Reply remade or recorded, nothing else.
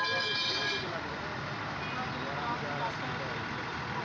recorded